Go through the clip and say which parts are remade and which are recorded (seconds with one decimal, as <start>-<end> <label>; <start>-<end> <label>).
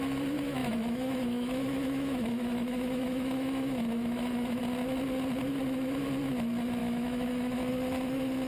0.0-0.6 recorded; 0.6-4.6 remade; 4.6-6.8 recorded; 6.8-7.7 remade; 7.7-8.5 recorded